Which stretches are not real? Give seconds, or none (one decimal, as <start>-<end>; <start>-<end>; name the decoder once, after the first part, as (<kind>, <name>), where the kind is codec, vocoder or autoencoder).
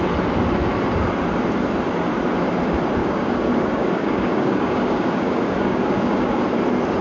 3.0-6.4 (codec, DAC)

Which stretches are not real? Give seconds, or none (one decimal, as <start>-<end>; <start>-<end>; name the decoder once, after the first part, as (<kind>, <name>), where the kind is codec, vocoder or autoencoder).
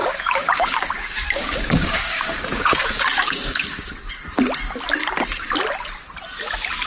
0.0-4.1 (codec, DAC)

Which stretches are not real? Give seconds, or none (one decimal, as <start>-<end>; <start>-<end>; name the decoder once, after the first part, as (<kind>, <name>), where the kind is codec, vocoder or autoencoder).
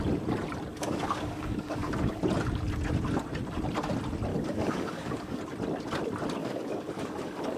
0.7-2.2 (codec, DAC); 4.3-5.4; 6.4-7.6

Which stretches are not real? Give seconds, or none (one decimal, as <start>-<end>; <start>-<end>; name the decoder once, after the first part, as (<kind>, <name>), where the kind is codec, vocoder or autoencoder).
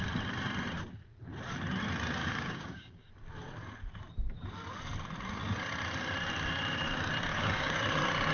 2.2-3.1 (codec, DAC); 7.3-7.8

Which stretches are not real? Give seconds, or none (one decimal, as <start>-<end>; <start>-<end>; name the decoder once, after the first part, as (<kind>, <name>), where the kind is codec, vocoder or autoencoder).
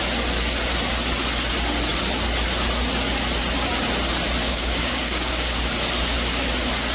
4.4-5.6 (codec, DAC)